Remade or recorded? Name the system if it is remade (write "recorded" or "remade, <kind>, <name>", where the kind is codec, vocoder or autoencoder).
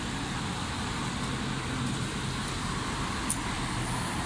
recorded